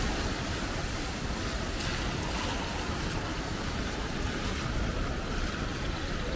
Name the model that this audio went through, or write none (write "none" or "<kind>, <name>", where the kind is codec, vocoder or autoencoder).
none